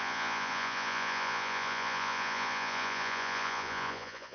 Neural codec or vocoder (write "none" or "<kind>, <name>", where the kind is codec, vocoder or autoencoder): vocoder, Vocos